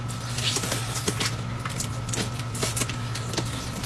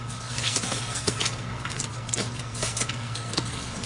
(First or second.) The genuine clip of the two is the first